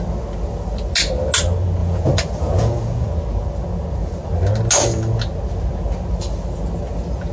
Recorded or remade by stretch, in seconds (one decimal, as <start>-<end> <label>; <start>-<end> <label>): 0.0-1.8 recorded; 1.8-3.1 remade; 3.1-7.3 recorded